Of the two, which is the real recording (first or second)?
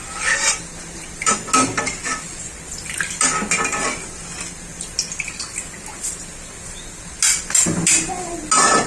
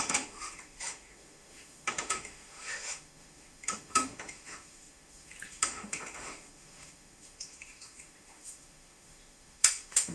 first